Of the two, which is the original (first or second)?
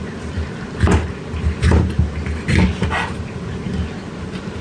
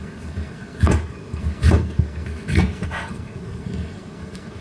first